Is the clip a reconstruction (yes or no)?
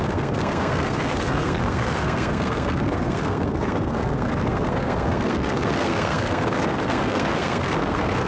yes